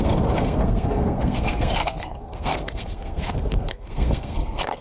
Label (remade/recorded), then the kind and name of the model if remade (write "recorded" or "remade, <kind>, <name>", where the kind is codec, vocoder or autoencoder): remade, codec, SNAC